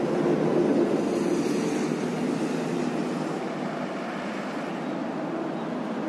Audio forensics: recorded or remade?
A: recorded